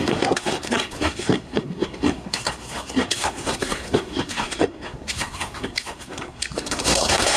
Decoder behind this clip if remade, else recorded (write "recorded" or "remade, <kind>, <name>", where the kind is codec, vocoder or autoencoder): remade, codec, SNAC